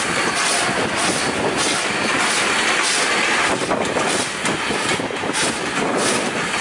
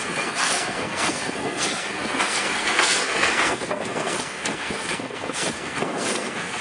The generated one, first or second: second